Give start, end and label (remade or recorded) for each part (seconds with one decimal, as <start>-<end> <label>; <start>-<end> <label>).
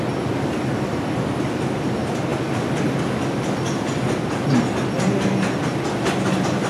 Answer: 0.0-6.7 recorded